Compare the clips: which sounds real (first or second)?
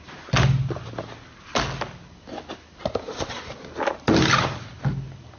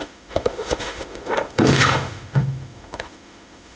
first